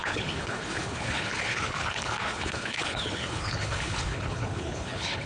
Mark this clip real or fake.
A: fake